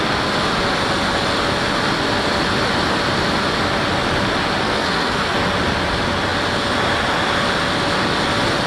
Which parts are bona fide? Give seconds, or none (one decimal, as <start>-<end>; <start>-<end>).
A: 0.0-4.6; 5.3-8.7